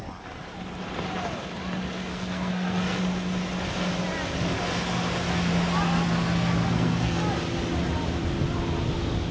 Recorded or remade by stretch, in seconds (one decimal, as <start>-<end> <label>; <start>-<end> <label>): 0.0-2.1 recorded; 2.1-3.0 remade; 3.0-6.6 recorded; 6.6-7.2 remade; 7.2-9.3 recorded